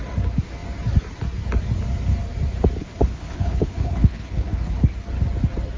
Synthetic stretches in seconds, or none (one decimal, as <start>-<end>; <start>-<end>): 2.8-4.9